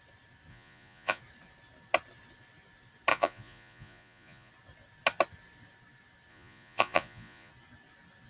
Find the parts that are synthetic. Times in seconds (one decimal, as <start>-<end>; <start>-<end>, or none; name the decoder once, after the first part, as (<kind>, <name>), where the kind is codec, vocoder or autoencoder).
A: 0.5-1.2 (vocoder, Vocos); 3.1-4.5; 6.3-7.5